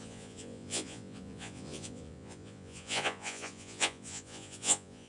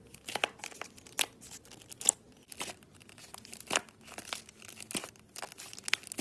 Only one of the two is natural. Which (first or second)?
second